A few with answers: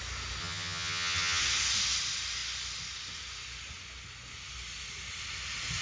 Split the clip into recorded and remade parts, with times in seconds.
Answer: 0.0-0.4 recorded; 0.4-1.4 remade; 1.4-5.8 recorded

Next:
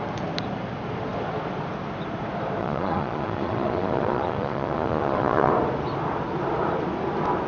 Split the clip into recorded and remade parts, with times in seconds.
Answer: 0.0-2.6 recorded; 2.6-5.5 remade; 5.5-7.5 recorded

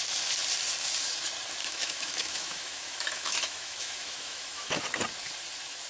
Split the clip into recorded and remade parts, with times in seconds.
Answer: 0.0-1.6 recorded; 1.6-4.8 remade; 4.8-5.9 recorded

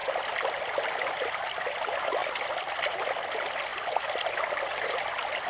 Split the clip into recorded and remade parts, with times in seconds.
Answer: 0.0-5.5 recorded

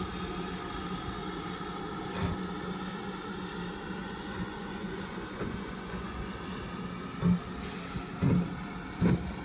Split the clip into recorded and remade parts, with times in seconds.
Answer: 0.0-4.0 recorded; 4.0-6.3 remade; 6.3-9.4 recorded